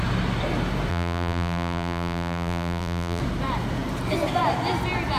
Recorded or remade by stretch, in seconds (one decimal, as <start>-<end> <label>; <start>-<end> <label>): 0.0-0.9 recorded; 0.9-3.2 remade; 3.2-5.2 recorded